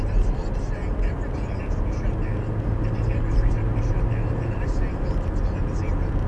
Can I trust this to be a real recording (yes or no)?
yes